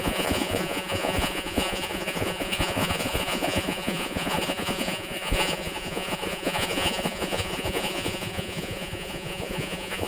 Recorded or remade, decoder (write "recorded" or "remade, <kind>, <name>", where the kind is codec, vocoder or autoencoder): remade, vocoder, Vocos